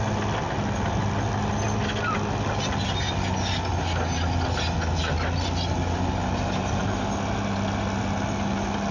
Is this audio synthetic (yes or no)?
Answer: no